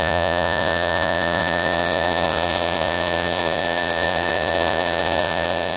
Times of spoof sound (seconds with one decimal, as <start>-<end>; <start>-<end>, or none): 0.0-5.8